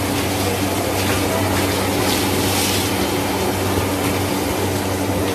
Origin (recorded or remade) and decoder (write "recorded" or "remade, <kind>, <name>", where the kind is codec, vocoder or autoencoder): recorded